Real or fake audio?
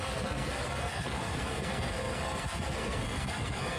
fake